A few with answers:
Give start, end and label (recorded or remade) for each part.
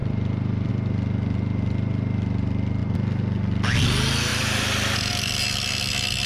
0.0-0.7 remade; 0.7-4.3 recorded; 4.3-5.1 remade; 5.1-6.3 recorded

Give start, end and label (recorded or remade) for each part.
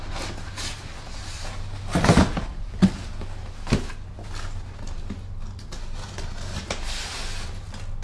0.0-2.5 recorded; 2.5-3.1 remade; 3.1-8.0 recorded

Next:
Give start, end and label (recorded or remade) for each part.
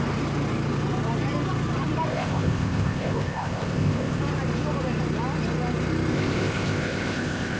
0.0-2.1 recorded; 2.1-4.2 remade; 4.2-6.1 recorded; 6.1-7.6 remade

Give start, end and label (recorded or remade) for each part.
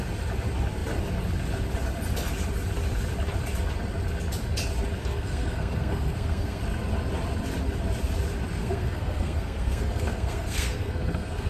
0.0-5.0 recorded; 5.0-6.6 remade; 6.6-8.6 recorded; 8.6-11.5 remade